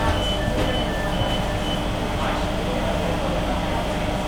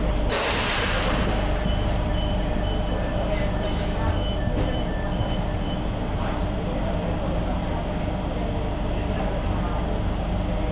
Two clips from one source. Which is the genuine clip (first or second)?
first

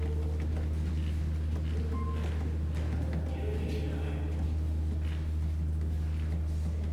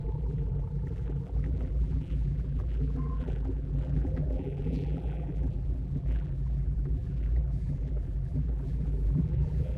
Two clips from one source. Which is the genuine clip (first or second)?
first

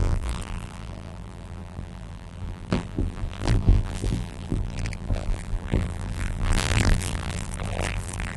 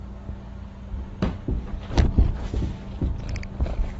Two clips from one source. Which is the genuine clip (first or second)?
second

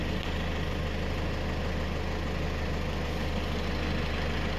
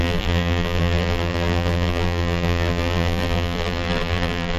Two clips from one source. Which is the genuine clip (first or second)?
first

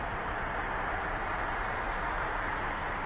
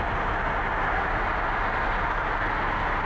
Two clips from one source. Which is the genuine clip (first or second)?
second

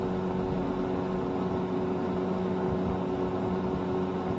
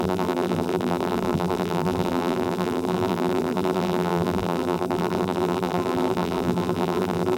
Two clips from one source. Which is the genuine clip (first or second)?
first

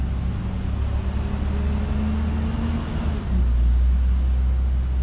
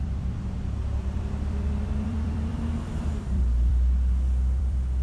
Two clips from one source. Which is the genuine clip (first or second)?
first